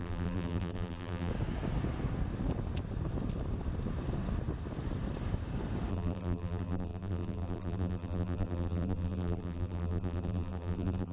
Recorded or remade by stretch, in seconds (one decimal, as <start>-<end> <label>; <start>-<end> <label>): 0.0-1.3 remade; 1.3-5.9 recorded; 5.9-11.1 remade